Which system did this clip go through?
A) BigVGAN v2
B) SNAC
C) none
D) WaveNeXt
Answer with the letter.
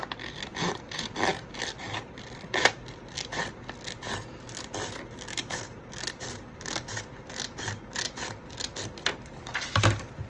A